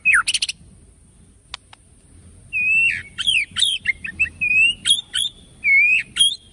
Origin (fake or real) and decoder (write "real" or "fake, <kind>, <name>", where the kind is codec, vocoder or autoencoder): real